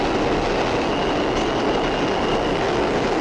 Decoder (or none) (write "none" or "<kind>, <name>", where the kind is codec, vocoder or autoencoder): none